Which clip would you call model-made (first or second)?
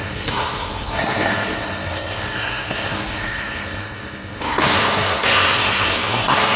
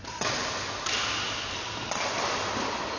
first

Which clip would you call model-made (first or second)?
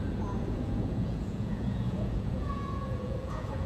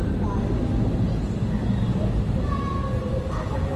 first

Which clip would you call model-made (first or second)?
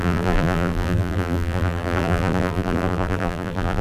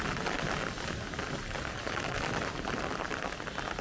first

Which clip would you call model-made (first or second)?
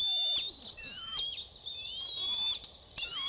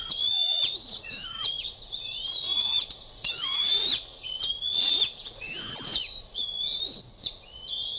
second